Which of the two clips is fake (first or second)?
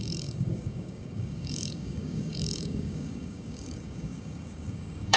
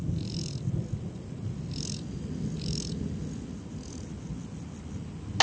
first